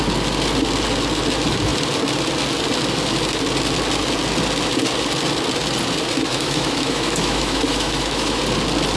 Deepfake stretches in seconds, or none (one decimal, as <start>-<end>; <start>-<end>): 6.3-8.4

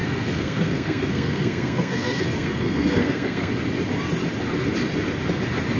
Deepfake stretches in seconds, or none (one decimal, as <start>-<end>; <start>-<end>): 0.0-3.5

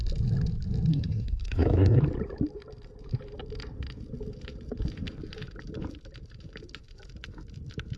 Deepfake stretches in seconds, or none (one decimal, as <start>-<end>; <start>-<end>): 0.9-2.0

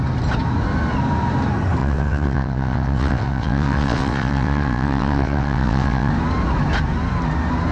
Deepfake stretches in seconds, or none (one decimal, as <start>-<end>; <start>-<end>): 1.8-6.1

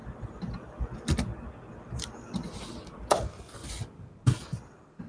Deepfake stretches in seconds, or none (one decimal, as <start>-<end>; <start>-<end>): none

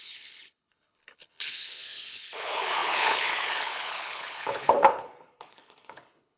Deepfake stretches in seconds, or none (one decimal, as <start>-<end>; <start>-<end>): 0.0-6.4

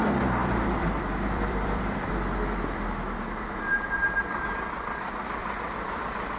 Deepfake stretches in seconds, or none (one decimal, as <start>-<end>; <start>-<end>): 0.4-2.1; 5.4-6.0